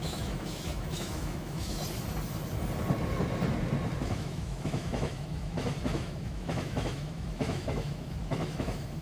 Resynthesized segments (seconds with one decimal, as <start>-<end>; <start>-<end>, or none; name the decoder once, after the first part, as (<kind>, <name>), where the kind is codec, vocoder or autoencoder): 0.0-1.8 (autoencoder, DAC-VAE); 4.0-9.0